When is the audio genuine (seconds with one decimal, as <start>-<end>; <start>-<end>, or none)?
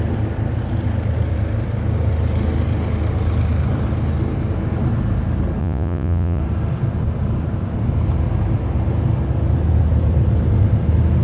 0.0-5.6; 6.4-11.2